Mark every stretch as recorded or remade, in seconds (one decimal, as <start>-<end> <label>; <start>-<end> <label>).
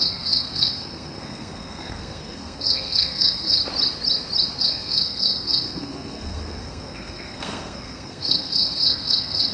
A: 0.0-3.6 remade; 3.6-4.6 recorded; 4.6-9.5 remade